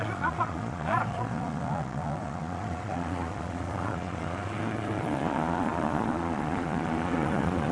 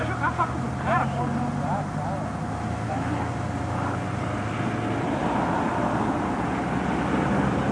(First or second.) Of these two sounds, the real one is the second